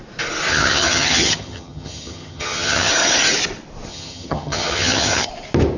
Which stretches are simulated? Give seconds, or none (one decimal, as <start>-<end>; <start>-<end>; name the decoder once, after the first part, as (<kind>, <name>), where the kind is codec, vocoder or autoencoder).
0.5-2.9 (vocoder, HiFi-GAN); 3.9-5.3